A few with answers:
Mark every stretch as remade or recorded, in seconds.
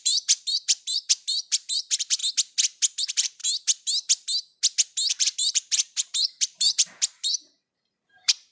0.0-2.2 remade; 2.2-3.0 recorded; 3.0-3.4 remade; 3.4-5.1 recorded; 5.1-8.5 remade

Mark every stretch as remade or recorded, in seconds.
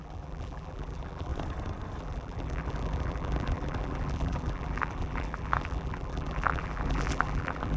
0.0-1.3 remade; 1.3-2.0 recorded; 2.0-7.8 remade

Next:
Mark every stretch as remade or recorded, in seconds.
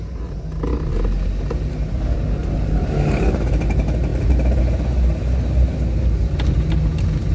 0.0-2.4 recorded; 2.4-3.6 remade; 3.6-4.1 recorded; 4.1-4.6 remade; 4.6-7.3 recorded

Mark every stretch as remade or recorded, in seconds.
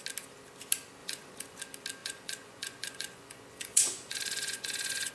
0.0-1.0 recorded; 1.0-1.6 remade; 1.6-2.0 recorded; 2.0-5.1 remade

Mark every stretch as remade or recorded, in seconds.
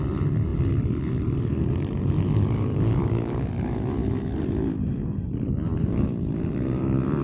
0.0-2.7 recorded; 2.7-3.5 remade; 3.5-7.2 recorded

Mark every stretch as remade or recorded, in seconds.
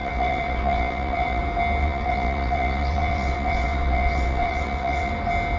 0.0-1.4 remade; 1.4-1.8 recorded; 1.8-5.1 remade; 5.1-5.6 recorded